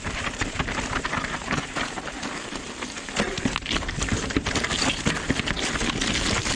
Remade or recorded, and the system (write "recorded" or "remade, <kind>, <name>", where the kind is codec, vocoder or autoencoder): recorded